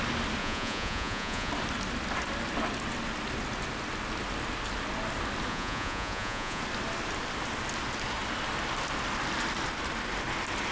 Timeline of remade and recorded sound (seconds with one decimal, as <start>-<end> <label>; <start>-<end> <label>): 0.0-0.4 recorded; 0.4-1.5 remade; 1.5-5.5 recorded; 5.5-6.6 remade; 6.6-10.7 recorded